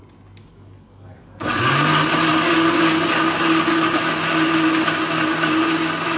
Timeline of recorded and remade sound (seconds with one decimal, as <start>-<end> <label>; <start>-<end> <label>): 0.0-0.4 recorded; 0.4-1.6 remade; 1.6-6.2 recorded

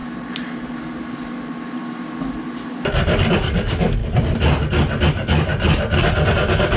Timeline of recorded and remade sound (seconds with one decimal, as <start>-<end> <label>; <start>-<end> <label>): 0.0-3.3 recorded; 3.3-4.0 remade; 4.0-5.1 recorded; 5.1-5.5 remade; 5.5-6.8 recorded

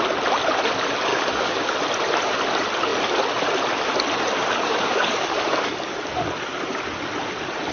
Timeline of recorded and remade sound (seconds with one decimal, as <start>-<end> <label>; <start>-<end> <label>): 0.0-1.1 recorded; 1.1-1.6 remade; 1.6-4.4 recorded; 4.4-6.1 remade; 6.1-7.7 recorded